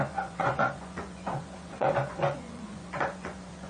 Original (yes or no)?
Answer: no